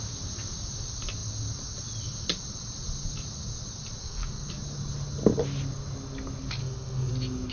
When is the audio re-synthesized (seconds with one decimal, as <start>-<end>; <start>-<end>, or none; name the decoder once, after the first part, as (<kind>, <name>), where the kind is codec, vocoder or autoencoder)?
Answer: 4.0-4.5 (codec, SNAC); 6.6-7.1